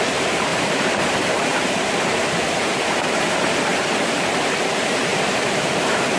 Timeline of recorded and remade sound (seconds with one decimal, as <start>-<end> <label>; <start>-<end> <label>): 0.0-6.2 remade